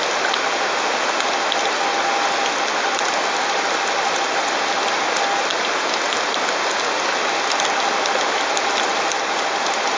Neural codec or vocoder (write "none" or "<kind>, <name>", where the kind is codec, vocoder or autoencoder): none